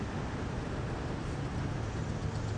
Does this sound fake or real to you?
fake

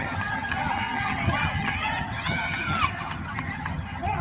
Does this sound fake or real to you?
fake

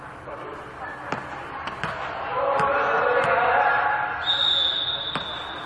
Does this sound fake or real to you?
real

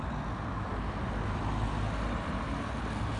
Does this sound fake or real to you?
real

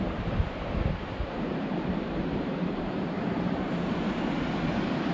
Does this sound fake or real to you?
fake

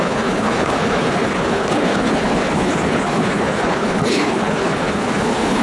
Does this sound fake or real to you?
fake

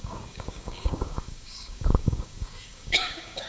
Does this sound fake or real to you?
fake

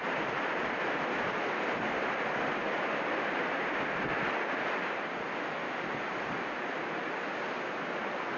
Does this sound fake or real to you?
real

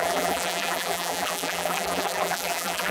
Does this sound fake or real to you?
fake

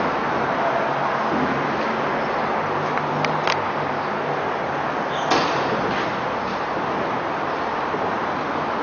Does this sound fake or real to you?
real